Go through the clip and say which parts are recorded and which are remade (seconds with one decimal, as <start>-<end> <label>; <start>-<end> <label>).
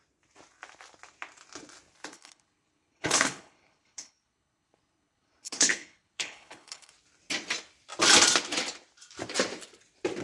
0.0-2.1 recorded; 2.1-6.9 remade; 6.9-10.2 recorded